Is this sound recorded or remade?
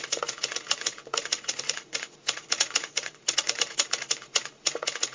remade